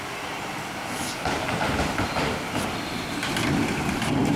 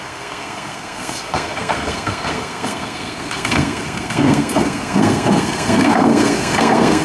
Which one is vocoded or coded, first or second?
second